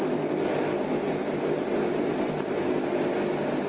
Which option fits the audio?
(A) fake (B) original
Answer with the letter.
B